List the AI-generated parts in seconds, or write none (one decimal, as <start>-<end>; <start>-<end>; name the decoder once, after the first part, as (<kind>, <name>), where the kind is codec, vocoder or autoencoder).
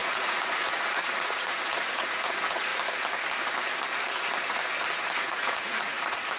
0.0-2.7 (vocoder, Vocos); 5.2-6.4